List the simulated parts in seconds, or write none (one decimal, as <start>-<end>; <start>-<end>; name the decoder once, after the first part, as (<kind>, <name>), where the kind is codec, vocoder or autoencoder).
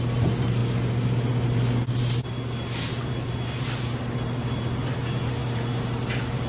none